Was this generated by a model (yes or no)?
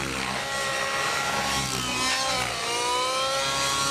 no